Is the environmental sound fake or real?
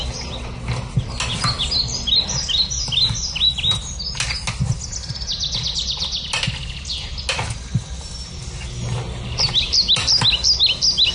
real